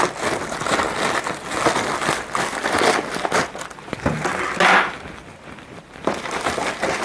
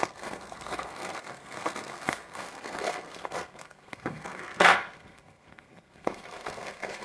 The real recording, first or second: first